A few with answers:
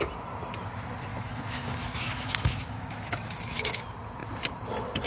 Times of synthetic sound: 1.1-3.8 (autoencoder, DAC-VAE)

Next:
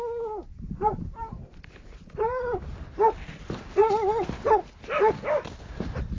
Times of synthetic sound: 0.5-2.6 (vocoder, BigVGAN v2)

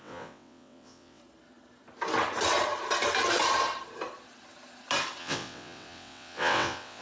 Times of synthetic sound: 0.0-1.2 (vocoder, WaveNeXt); 5.2-7.0

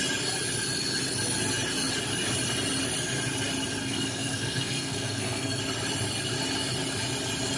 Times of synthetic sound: 3.8-5.6 (codec, SNAC)